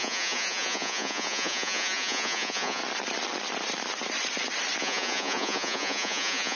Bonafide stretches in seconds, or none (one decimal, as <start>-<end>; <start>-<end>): 2.8-4.8